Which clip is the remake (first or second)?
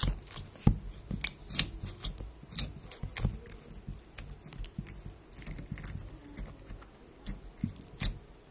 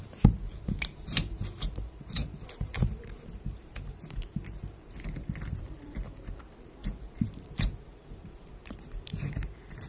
second